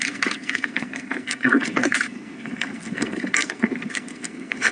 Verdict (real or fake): fake